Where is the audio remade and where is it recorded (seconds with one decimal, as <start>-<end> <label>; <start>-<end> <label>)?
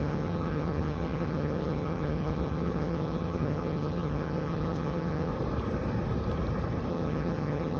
0.0-5.3 remade; 5.3-6.9 recorded; 6.9-7.8 remade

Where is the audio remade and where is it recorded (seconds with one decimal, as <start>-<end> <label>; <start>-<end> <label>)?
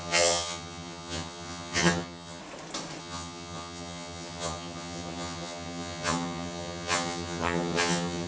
0.0-2.4 remade; 2.4-3.0 recorded; 3.0-8.3 remade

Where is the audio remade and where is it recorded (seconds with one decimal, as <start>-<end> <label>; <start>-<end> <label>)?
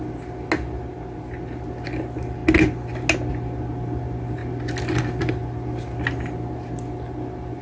0.0-7.6 recorded